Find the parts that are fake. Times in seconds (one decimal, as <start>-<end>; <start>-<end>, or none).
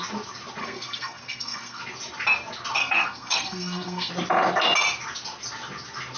0.6-1.8; 2.8-4.1